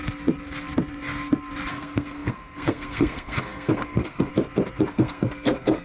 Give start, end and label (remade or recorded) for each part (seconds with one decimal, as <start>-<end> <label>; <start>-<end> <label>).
0.0-1.7 recorded; 1.7-4.3 remade; 4.3-4.9 recorded; 4.9-5.8 remade